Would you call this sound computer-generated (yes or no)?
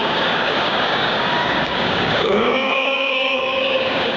yes